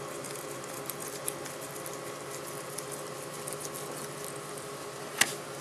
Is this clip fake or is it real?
real